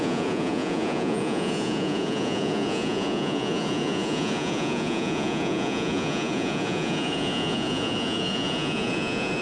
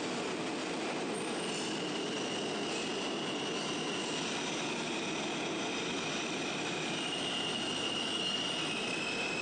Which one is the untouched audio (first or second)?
second